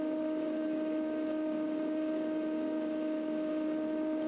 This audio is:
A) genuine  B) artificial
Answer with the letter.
B